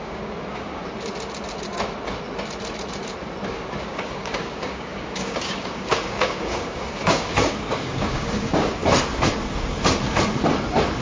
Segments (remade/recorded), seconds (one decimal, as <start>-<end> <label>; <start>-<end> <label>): 0.0-0.8 remade; 0.8-3.8 recorded; 3.8-8.8 remade; 8.8-11.0 recorded